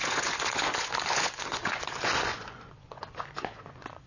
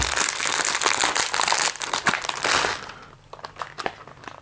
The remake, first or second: first